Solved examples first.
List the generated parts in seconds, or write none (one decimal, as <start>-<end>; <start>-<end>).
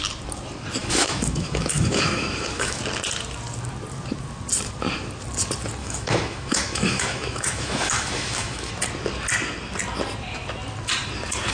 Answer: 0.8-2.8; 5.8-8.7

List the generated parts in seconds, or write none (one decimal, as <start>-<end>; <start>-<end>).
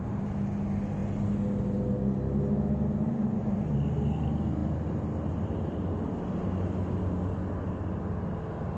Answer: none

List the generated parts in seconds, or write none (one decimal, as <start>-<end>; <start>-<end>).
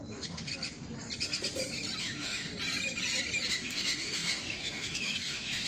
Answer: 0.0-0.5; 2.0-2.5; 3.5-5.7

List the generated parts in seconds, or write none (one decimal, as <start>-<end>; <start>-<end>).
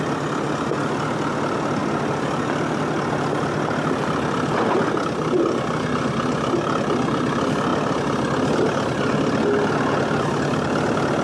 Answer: none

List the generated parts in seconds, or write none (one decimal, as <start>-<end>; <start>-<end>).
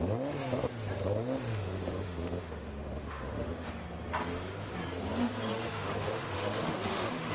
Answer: 1.5-3.7; 5.5-7.3